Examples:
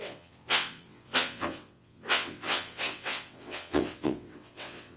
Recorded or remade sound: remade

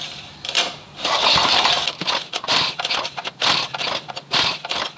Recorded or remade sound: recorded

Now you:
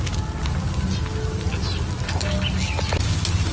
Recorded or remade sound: recorded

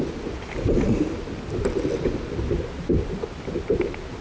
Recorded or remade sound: recorded